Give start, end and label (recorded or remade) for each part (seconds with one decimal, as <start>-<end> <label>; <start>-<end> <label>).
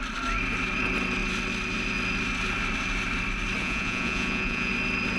0.0-3.6 recorded; 3.6-4.7 remade; 4.7-5.2 recorded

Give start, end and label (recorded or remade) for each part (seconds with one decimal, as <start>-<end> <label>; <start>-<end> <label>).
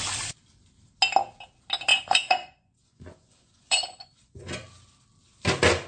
0.0-1.9 recorded; 1.9-4.4 remade; 4.4-5.9 recorded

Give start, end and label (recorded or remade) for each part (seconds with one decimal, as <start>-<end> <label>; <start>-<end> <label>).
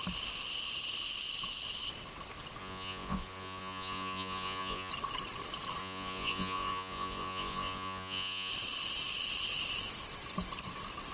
0.0-2.6 recorded; 2.6-4.9 remade; 4.9-5.8 recorded; 5.8-8.5 remade; 8.5-11.1 recorded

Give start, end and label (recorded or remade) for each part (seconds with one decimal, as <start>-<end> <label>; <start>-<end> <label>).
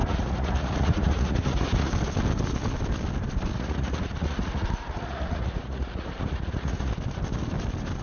0.0-1.9 remade; 1.9-3.5 recorded; 3.5-6.9 remade; 6.9-8.0 recorded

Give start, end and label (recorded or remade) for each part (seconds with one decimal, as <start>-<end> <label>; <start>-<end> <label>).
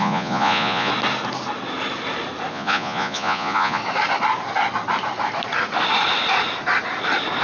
0.0-0.9 remade; 0.9-2.5 recorded; 2.5-3.8 remade; 3.8-7.4 recorded